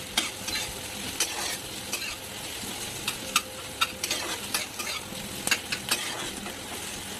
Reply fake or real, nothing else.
real